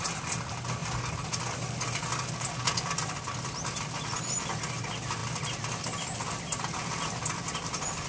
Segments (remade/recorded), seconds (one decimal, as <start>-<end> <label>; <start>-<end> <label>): 0.0-5.2 recorded; 5.2-6.2 remade; 6.2-8.1 recorded